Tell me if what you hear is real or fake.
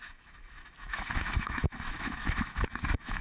fake